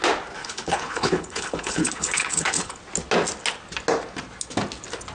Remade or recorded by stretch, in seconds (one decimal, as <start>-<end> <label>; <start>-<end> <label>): 0.0-0.4 recorded; 0.4-2.8 remade; 2.8-5.1 recorded